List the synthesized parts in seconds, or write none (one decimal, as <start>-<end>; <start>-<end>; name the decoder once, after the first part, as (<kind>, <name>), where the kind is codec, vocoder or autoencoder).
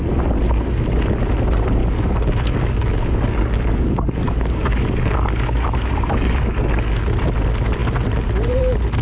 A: 1.8-7.0 (codec, DAC)